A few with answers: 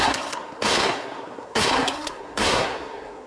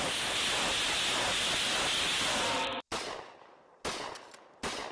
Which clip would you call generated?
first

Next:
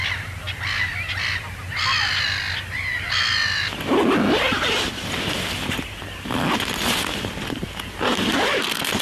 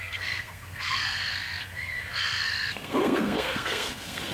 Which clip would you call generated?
second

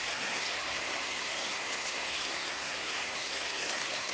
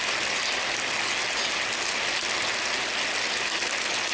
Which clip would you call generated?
first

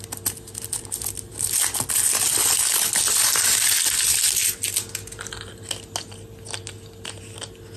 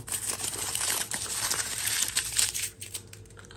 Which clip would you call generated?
second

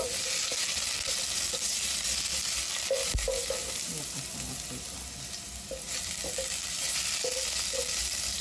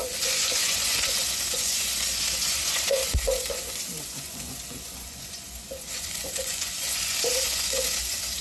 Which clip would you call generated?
second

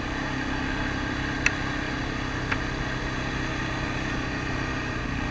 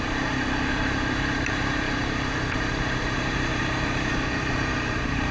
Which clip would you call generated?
second